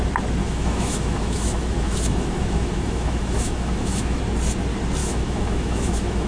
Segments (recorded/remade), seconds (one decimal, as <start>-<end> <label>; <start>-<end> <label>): 0.0-0.4 recorded; 0.4-4.2 remade; 4.2-5.0 recorded; 5.0-6.3 remade